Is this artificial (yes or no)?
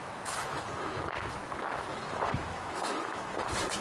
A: yes